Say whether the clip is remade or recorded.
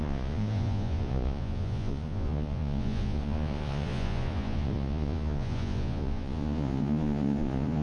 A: remade